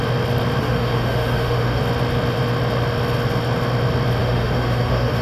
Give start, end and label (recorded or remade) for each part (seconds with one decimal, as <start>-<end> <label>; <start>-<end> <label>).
0.0-0.6 recorded; 0.6-1.8 remade; 1.8-4.2 recorded; 4.2-5.2 remade